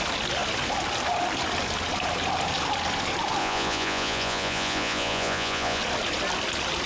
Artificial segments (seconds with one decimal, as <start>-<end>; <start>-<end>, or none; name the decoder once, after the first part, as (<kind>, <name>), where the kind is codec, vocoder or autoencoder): 3.4-5.8 (vocoder, Vocos)